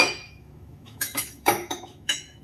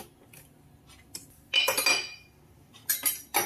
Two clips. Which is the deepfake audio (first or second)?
first